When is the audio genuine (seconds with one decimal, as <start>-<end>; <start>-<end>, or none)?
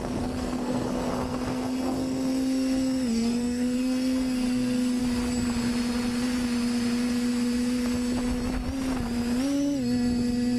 5.0-10.6